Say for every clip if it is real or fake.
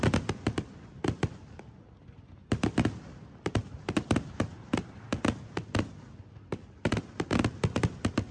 real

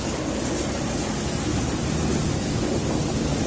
real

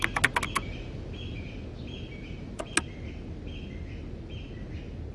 real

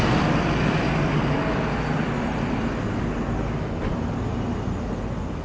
real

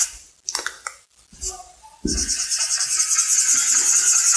real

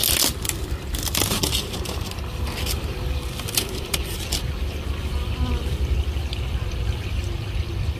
real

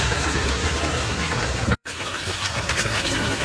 fake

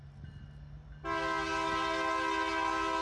real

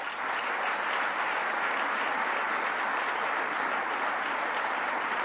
real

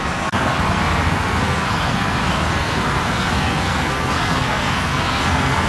fake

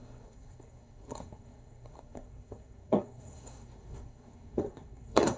fake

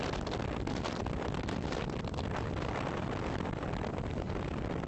real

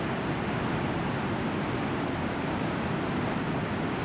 real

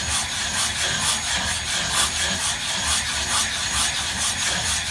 real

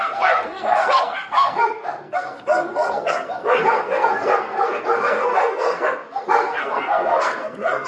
fake